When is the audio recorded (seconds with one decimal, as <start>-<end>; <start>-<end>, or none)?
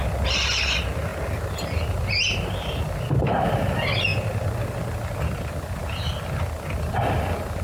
0.0-7.6